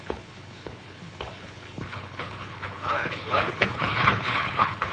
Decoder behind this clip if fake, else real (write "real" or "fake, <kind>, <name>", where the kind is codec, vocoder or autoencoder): fake, codec, HILCodec